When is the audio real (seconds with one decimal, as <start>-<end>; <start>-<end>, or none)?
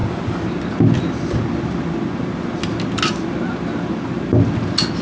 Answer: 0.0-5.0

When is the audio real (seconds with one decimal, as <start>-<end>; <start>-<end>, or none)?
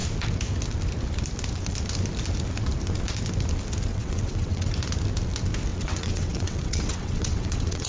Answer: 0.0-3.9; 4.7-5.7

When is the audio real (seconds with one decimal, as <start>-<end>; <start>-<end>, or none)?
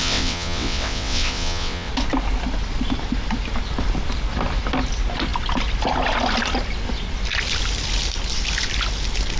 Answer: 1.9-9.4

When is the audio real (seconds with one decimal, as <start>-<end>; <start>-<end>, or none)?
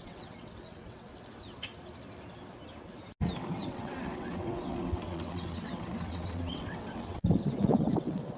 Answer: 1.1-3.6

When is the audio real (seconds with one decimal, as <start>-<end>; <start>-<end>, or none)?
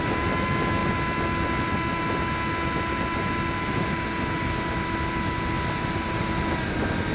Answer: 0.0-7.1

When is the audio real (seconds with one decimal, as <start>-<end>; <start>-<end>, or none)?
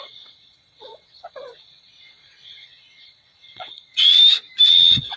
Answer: 4.1-4.7